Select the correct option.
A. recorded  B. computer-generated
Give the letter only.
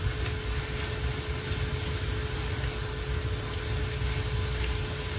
A